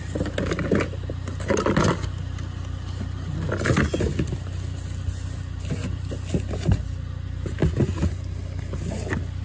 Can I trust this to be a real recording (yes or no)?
yes